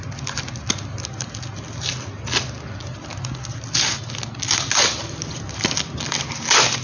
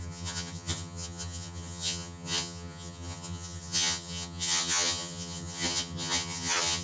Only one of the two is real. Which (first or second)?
first